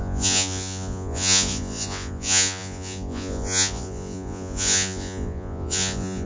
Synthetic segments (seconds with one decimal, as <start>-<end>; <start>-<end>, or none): 0.0-6.3